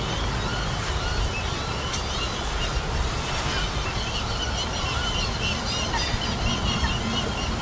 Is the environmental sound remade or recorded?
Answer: recorded